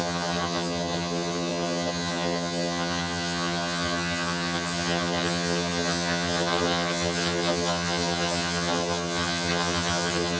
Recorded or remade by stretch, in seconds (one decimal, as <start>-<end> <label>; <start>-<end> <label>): 0.0-10.4 remade